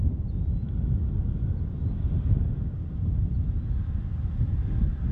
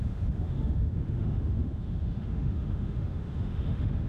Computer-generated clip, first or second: second